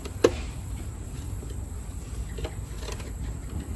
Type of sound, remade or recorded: remade